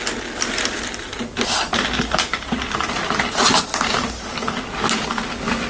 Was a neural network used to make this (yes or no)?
no